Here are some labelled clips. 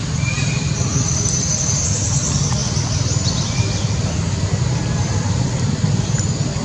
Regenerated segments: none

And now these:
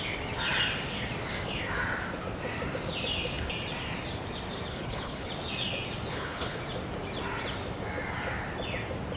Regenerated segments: 4.7-5.3; 6.1-6.6

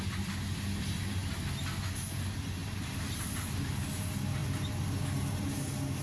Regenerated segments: none

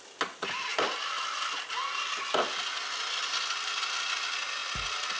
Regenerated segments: none

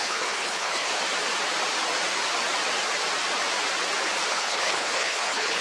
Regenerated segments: 0.0-0.9; 4.3-5.6

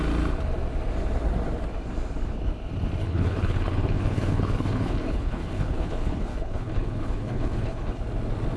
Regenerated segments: 3.0-8.0

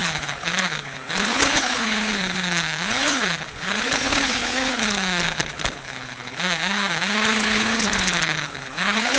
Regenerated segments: 0.0-9.2